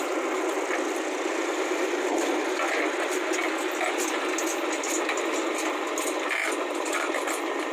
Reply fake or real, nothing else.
real